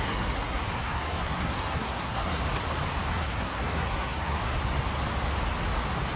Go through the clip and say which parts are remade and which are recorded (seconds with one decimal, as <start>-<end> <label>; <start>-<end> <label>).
0.0-2.4 remade; 2.4-3.1 recorded; 3.1-4.6 remade; 4.6-6.2 recorded

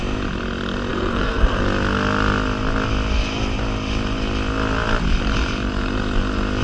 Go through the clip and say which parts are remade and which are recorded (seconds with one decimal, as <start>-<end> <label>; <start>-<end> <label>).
0.0-0.9 recorded; 0.9-1.6 remade; 1.6-6.6 recorded

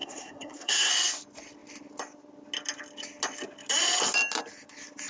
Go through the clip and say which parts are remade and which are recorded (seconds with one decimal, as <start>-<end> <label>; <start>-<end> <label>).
0.0-0.9 remade; 0.9-5.1 recorded